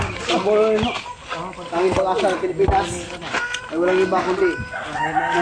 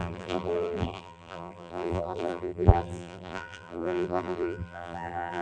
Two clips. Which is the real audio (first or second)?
first